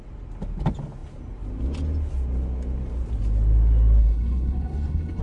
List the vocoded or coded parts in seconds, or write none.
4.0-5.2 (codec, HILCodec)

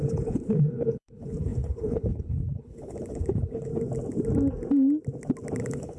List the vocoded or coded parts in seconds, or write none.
0.0-3.7 (codec, HILCodec); 5.6-6.0

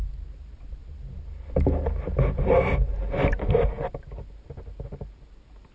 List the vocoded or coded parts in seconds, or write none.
none

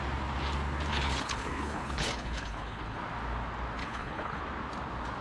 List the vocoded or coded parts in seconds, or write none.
0.9-3.0 (codec, HILCodec); 3.8-4.4

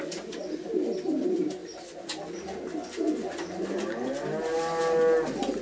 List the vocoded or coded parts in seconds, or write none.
none

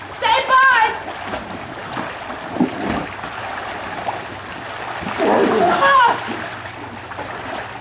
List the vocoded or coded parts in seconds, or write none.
none

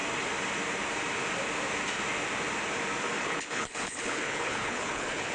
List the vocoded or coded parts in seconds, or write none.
3.2-5.3 (codec, HILCodec)

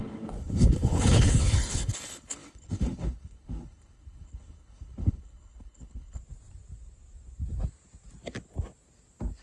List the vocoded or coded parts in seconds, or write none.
0.0-6.2 (codec, HILCodec)